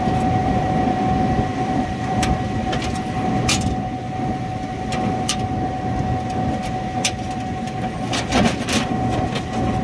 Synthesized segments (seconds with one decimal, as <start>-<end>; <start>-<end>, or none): 0.4-2.2